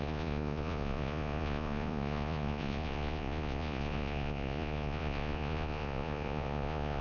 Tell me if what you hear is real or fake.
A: fake